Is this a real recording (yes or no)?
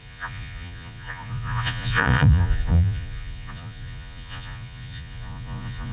no